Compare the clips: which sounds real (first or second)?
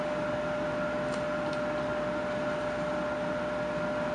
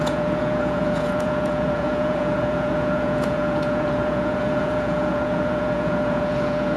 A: first